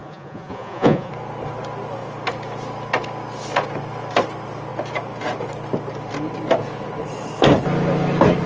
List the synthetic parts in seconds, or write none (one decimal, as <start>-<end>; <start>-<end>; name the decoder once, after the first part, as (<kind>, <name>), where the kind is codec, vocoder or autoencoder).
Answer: 0.0-1.1 (vocoder, Vocos)